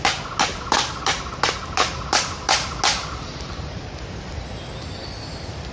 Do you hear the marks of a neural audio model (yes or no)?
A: no